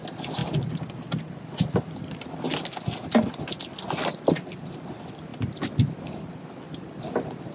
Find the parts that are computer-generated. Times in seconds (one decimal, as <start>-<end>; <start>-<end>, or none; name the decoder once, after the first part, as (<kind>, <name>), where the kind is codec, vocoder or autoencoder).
none